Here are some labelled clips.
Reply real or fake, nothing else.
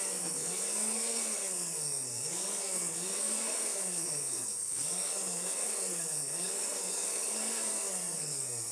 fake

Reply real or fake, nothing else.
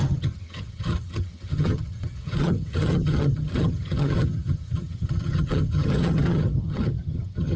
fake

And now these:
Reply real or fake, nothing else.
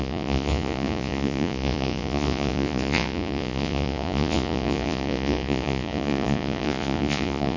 fake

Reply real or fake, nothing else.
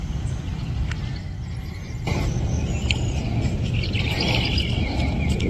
fake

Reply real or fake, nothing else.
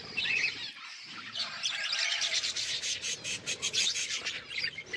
fake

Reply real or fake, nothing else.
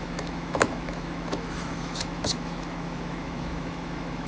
fake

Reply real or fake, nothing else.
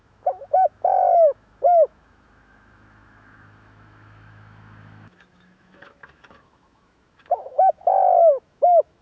fake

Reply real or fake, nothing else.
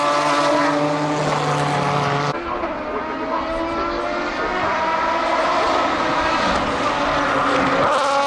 real